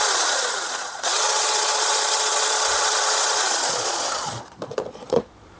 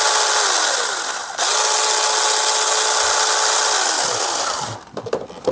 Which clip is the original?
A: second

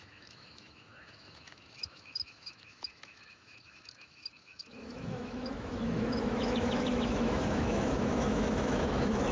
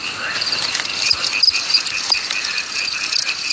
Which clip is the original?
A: second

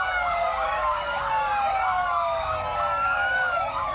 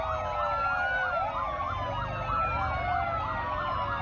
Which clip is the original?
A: second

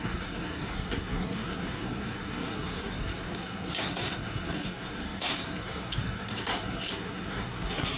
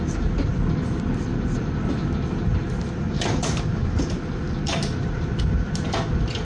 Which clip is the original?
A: second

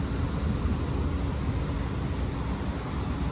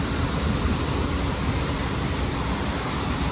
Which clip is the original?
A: first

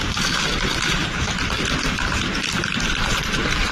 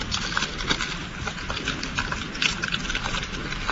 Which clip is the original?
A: second